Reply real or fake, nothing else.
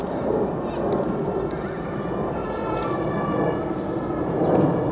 real